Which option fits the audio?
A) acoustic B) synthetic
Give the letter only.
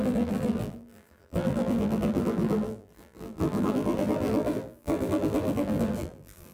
B